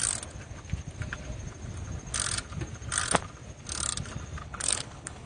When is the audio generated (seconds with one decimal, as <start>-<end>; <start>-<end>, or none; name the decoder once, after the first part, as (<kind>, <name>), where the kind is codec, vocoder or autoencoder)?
4.4-5.3 (codec, HILCodec)

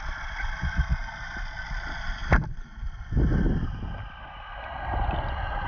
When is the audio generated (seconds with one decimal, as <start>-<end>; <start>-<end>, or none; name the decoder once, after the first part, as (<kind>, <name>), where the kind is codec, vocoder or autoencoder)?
none

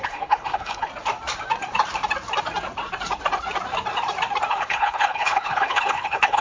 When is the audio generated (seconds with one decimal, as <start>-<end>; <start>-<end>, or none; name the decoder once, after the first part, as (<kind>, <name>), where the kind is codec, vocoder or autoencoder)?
0.0-0.9 (codec, HILCodec); 4.5-6.4

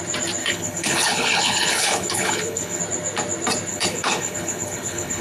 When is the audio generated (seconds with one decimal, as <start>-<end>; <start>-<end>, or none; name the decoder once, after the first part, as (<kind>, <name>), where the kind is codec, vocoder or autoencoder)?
0.4-2.8 (codec, HILCodec); 3.7-5.2